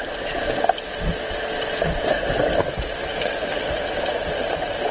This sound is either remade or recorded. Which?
recorded